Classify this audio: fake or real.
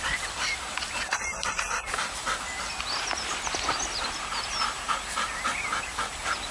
real